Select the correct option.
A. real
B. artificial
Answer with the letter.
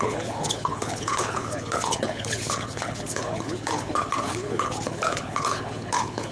B